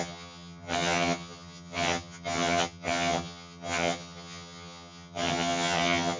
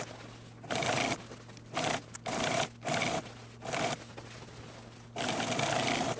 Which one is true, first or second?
second